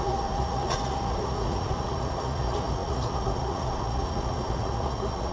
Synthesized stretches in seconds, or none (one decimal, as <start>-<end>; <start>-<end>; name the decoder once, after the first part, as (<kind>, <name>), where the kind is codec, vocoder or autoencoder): 0.0-5.3 (vocoder, Vocos)